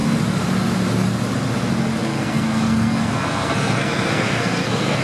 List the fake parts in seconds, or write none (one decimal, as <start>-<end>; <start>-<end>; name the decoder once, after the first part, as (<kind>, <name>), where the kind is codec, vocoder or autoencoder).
2.0-5.0 (codec, SNAC)

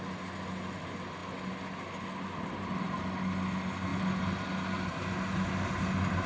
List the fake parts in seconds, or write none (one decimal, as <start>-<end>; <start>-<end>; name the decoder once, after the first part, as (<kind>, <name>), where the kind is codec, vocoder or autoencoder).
none

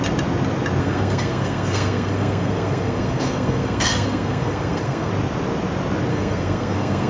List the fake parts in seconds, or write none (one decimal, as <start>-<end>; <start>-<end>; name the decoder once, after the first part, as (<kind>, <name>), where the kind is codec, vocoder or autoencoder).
0.8-5.1 (codec, SNAC); 6.1-7.1